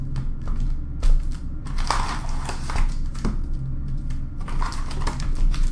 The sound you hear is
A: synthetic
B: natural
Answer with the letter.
B